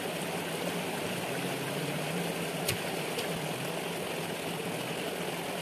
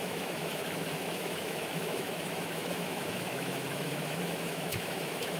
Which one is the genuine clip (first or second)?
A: first